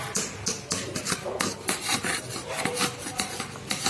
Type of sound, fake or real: real